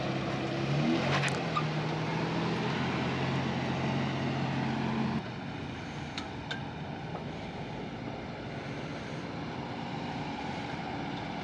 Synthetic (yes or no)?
no